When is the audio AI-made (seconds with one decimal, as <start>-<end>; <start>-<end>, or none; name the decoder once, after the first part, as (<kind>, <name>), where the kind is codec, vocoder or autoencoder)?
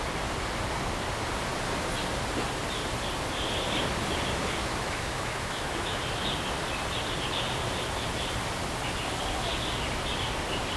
4.6-6.0 (autoencoder, DAC-VAE)